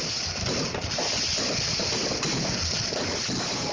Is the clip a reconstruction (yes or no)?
no